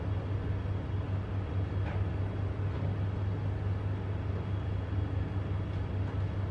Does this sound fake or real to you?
real